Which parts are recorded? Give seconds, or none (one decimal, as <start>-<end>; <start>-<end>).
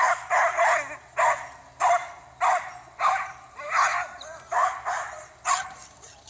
0.0-6.3